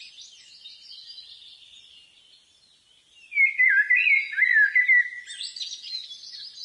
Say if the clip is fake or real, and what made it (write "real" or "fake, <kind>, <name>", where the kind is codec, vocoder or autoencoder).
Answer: real